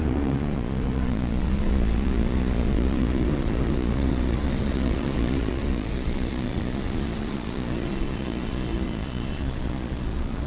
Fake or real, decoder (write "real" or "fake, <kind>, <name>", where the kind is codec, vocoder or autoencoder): fake, vocoder, Vocos